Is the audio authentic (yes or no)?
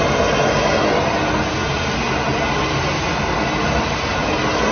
yes